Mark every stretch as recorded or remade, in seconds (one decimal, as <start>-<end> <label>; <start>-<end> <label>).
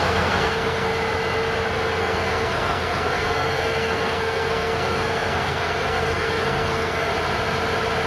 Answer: 0.0-0.9 remade; 0.9-2.0 recorded; 2.0-7.1 remade; 7.1-8.1 recorded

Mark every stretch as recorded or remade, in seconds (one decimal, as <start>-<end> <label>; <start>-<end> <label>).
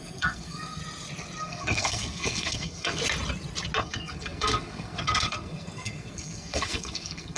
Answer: 0.0-0.8 remade; 0.8-1.4 recorded; 1.4-3.0 remade; 3.0-3.8 recorded; 3.8-7.4 remade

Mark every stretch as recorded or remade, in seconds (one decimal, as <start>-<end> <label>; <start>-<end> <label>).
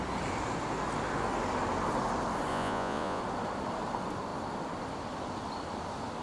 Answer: 0.0-2.5 recorded; 2.5-3.2 remade; 3.2-6.2 recorded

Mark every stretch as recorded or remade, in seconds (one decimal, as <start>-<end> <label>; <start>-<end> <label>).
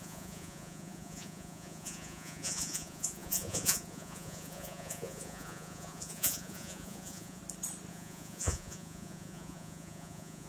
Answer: 0.0-7.4 remade; 7.4-7.9 recorded; 7.9-10.5 remade